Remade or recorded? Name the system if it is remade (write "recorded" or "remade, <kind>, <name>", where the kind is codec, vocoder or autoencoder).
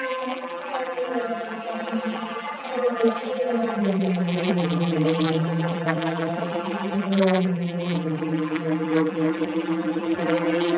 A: remade, vocoder, BigVGAN v2